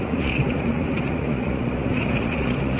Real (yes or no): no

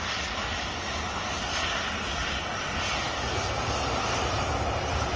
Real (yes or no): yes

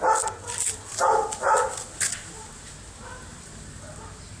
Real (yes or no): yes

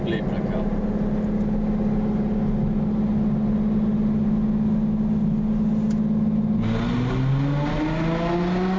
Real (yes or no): yes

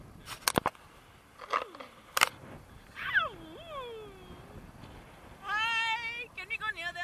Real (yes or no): yes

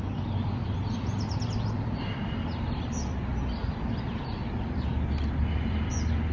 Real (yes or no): no